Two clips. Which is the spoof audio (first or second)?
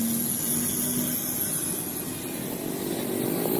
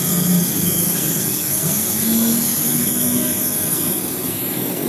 second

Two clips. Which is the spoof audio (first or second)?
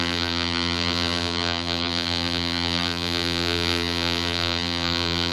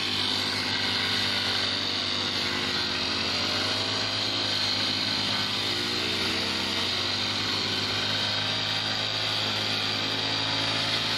first